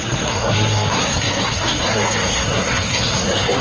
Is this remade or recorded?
remade